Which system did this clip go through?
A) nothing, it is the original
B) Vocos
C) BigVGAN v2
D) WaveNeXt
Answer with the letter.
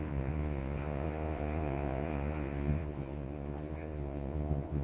B